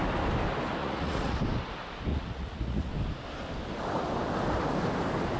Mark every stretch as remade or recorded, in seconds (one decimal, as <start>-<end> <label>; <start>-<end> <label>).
0.0-0.8 recorded; 0.8-1.4 remade; 1.4-2.1 recorded; 2.1-2.9 remade; 2.9-5.4 recorded